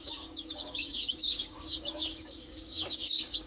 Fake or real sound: fake